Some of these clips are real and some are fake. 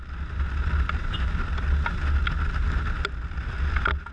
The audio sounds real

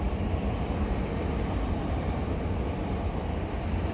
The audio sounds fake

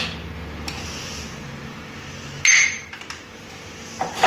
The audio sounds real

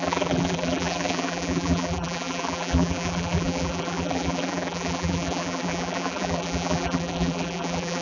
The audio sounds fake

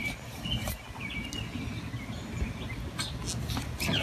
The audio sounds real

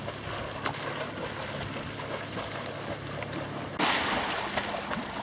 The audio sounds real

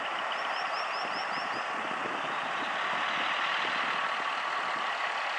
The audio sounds real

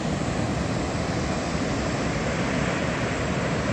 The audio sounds real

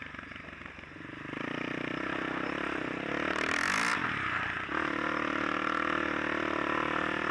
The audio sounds fake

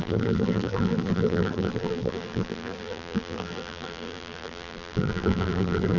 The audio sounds fake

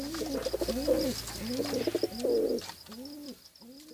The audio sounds real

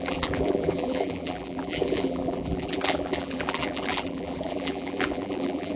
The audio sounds fake